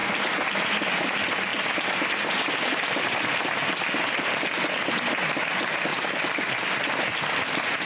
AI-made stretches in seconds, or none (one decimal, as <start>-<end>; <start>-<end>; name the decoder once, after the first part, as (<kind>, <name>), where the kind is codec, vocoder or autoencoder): 5.9-6.9 (vocoder, BigVGAN v2)